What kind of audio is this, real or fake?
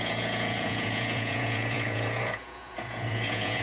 fake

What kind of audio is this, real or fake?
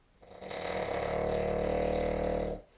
real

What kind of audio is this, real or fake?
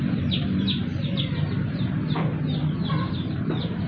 fake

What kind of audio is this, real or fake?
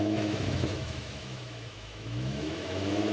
fake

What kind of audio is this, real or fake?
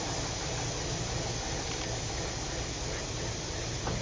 real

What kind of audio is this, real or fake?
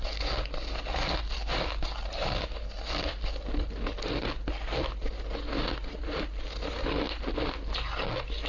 real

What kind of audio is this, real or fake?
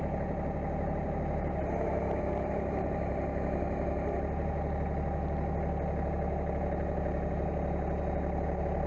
real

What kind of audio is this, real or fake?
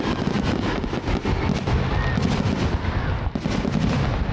real